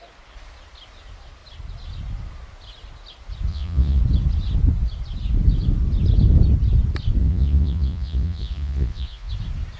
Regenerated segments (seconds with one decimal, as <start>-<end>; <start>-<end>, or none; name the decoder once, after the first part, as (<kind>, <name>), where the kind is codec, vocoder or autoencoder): 3.5-4.0 (vocoder, Vocos); 7.2-9.3